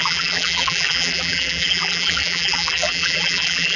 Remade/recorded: remade